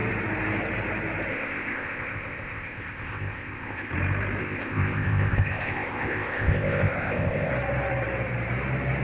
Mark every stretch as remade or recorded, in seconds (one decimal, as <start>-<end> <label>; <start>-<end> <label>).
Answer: 0.0-1.3 recorded; 1.3-3.9 remade; 3.9-4.4 recorded; 4.4-7.5 remade; 7.5-9.0 recorded